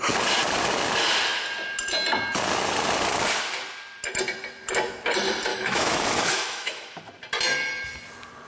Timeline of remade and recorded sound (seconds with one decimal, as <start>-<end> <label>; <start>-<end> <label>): 0.0-5.5 recorded; 5.5-7.0 remade; 7.0-8.5 recorded